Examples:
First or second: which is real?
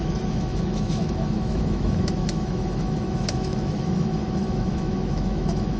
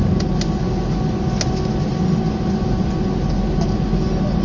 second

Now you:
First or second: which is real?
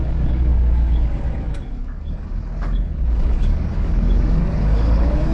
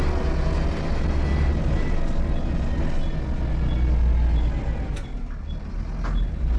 second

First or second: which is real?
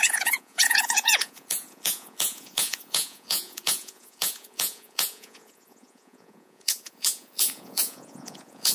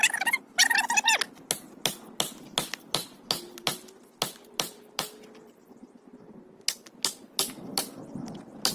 second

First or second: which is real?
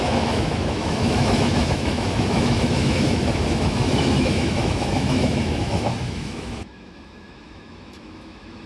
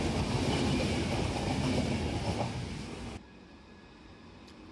second